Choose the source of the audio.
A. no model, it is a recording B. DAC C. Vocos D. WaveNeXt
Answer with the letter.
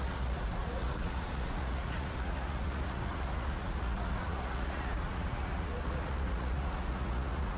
C